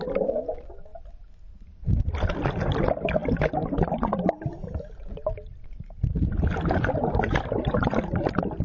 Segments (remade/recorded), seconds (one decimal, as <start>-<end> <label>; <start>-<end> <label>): 0.0-8.6 recorded